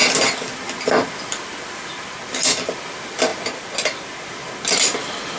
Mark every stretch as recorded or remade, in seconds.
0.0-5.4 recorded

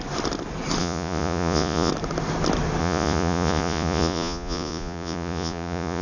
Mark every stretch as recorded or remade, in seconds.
0.0-0.8 recorded; 0.8-1.9 remade; 1.9-2.8 recorded; 2.8-6.0 remade

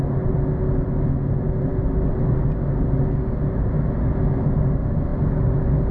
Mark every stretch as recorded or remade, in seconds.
0.0-5.9 recorded

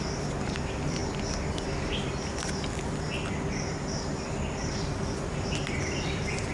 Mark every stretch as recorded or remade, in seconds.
0.0-6.5 recorded